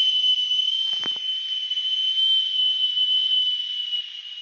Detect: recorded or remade recorded